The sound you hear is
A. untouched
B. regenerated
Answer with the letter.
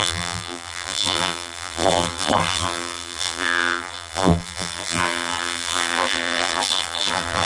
B